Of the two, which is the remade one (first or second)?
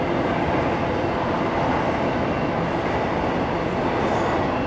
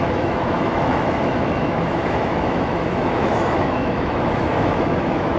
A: second